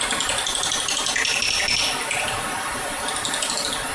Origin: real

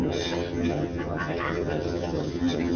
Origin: fake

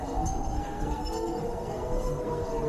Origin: fake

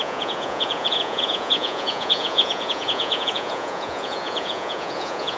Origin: fake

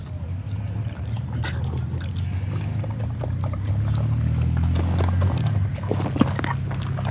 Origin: real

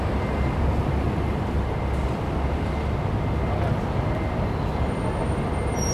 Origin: real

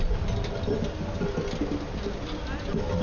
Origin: real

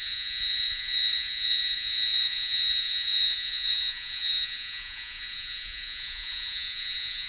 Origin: fake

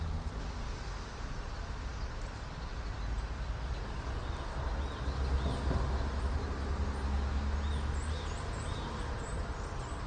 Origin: real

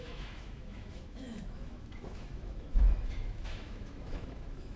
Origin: fake